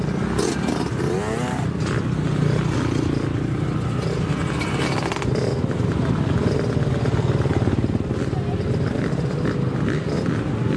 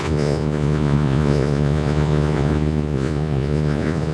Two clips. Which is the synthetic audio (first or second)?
second